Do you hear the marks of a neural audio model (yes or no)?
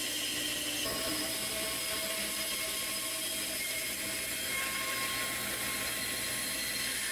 no